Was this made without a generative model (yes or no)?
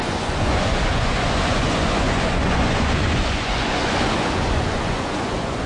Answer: no